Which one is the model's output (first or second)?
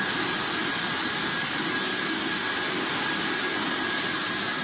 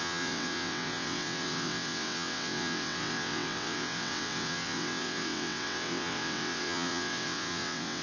second